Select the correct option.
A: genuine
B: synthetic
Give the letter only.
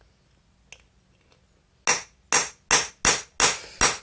A